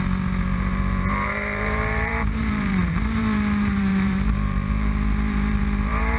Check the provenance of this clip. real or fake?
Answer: fake